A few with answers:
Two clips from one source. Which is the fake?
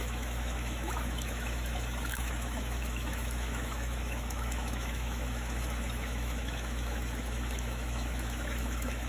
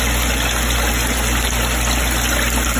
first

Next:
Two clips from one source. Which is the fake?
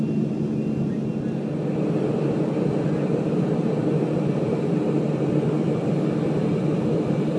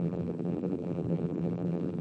second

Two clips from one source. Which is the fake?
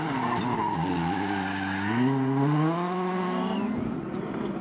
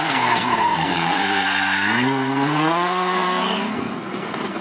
second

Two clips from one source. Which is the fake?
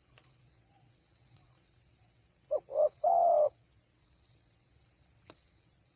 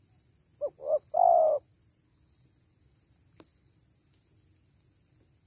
first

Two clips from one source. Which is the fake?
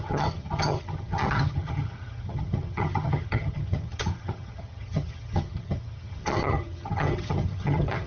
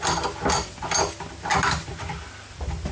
first